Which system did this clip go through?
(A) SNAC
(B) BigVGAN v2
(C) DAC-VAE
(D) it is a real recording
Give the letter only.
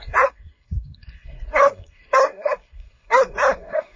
A